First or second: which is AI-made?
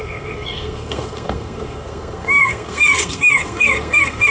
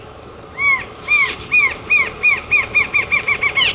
first